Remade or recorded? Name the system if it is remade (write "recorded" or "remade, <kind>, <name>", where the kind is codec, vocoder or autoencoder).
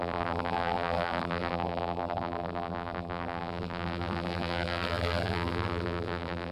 remade, vocoder, BigVGAN v2